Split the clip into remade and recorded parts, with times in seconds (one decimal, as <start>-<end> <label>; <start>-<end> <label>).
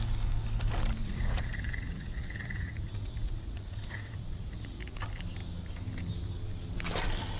0.0-1.0 recorded; 1.0-5.0 remade; 5.0-7.4 recorded